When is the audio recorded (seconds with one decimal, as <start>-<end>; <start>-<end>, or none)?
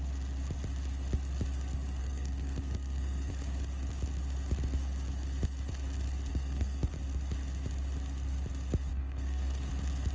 0.0-2.0; 3.3-6.3; 6.9-8.9; 9.7-10.1